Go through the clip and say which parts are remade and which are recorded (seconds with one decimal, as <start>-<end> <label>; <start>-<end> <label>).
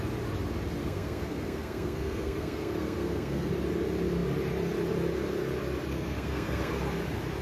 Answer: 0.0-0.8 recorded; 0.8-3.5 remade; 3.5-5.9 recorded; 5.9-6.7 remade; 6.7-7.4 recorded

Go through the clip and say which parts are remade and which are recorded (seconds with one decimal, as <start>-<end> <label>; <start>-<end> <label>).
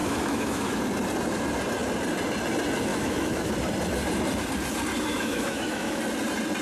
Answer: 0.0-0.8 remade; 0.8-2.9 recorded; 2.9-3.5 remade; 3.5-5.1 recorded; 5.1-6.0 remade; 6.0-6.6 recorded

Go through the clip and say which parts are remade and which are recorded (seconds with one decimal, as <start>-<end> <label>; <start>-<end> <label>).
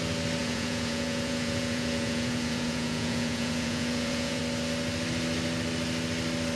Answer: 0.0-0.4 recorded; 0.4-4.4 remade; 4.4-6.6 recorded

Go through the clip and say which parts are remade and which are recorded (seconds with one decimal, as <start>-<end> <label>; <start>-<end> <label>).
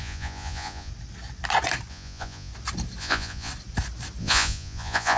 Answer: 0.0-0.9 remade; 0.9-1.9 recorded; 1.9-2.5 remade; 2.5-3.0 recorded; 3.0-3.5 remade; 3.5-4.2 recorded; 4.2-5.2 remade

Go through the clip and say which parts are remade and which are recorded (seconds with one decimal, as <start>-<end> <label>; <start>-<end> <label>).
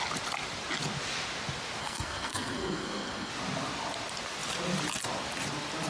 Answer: 0.0-1.8 recorded; 1.8-3.3 remade; 3.3-5.9 recorded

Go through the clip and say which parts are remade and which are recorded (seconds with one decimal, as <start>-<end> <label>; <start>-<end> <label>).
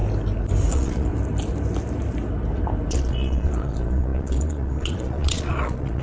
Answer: 0.0-0.7 recorded; 0.7-1.1 remade; 1.1-2.9 recorded; 2.9-6.0 remade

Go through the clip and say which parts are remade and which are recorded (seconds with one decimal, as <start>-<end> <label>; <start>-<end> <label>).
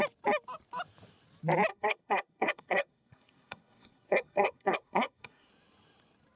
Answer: 0.0-1.7 recorded; 1.7-5.5 remade; 5.5-6.4 recorded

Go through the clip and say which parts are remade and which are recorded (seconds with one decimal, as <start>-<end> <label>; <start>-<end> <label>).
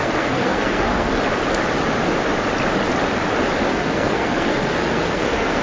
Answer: 0.0-1.2 remade; 1.2-3.7 recorded; 3.7-5.6 remade